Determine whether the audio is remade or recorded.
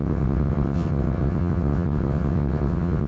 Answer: remade